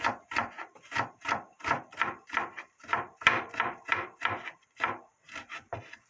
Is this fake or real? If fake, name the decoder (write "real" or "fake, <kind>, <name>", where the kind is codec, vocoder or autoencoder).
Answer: fake, vocoder, BigVGAN v2